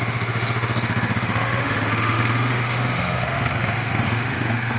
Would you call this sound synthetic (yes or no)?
yes